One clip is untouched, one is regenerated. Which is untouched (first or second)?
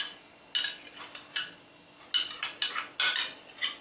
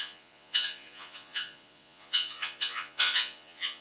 first